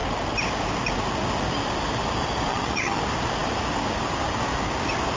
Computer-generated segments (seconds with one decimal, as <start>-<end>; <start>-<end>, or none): 2.5-3.0

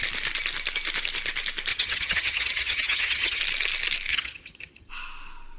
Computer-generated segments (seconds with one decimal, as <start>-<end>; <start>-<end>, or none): 1.7-3.4; 4.1-4.9

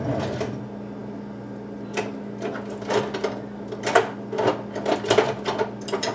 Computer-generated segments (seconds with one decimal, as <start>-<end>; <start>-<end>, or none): none